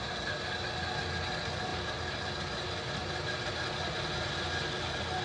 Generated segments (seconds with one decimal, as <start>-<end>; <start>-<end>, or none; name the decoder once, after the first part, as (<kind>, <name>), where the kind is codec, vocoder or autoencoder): 1.7-2.3 (vocoder, BigVGAN v2); 3.0-3.5